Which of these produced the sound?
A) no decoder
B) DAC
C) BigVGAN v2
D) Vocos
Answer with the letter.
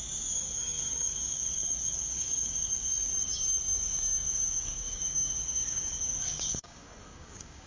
B